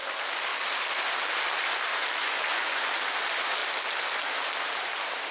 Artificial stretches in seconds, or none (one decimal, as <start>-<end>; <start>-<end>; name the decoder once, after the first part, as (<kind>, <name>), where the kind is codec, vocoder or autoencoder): 2.2-2.9 (vocoder, Vocos)